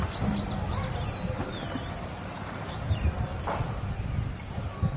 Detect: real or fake real